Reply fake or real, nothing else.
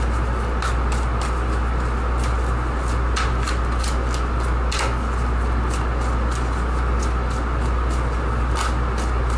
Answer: real